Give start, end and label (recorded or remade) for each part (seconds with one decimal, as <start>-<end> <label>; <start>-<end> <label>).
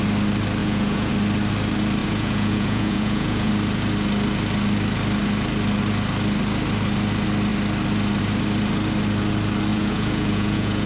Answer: 0.0-0.6 recorded; 0.6-1.1 remade; 1.1-2.0 recorded; 2.0-3.5 remade; 3.5-9.7 recorded; 9.7-10.9 remade